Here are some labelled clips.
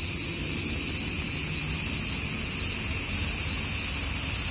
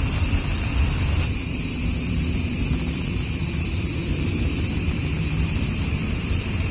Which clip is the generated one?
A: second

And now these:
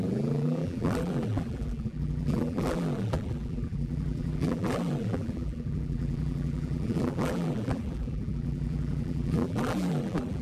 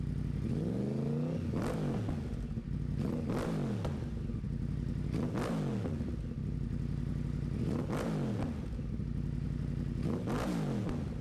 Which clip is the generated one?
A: first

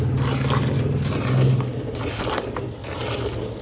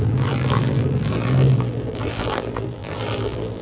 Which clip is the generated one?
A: second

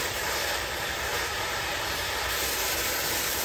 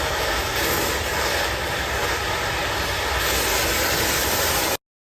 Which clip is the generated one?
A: first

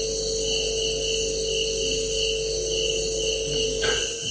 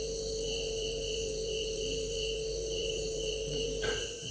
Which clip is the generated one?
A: second